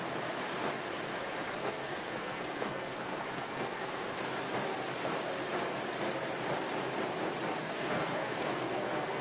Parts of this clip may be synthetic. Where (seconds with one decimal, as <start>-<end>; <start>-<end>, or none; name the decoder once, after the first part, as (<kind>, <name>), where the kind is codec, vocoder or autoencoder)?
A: 1.6-4.1 (codec, SNAC); 7.6-9.2